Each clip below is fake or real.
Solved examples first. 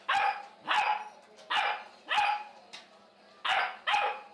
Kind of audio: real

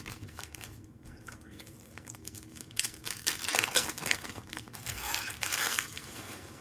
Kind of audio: fake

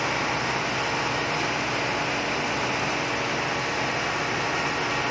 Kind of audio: real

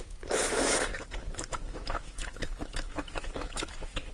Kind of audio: fake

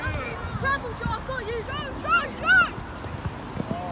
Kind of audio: real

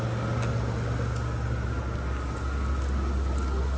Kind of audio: real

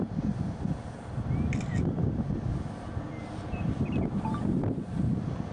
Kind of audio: real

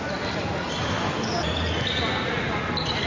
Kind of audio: real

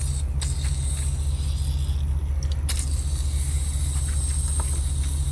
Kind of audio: real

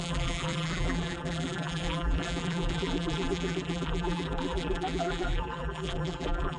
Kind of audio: fake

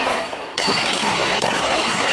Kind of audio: fake